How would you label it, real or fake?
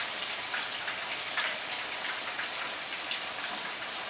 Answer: real